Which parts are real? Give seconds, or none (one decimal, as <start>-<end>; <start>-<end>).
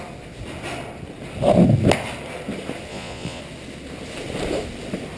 0.0-2.9; 3.4-5.2